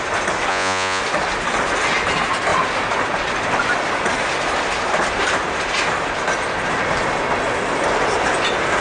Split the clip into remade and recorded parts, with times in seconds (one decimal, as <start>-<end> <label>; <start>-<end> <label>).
0.0-0.5 recorded; 0.5-1.0 remade; 1.0-8.8 recorded